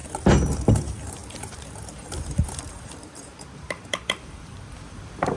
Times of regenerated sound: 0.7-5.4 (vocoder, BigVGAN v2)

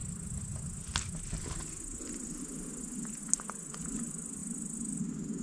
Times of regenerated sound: none

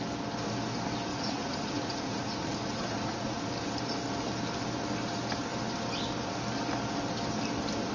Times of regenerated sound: 1.1-3.5 (vocoder, Vocos)

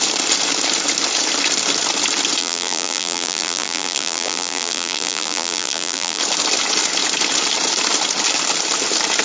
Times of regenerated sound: 2.4-6.2 (vocoder, BigVGAN v2)

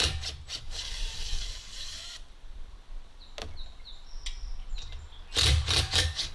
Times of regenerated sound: 0.6-2.0 (codec, DAC); 5.8-6.3